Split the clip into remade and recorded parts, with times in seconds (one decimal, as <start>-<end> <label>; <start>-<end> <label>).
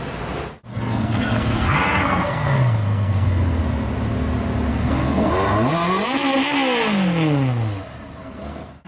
0.0-0.7 recorded; 0.7-3.6 remade; 3.6-4.7 recorded; 4.7-5.3 remade; 5.3-8.2 recorded; 8.2-8.9 remade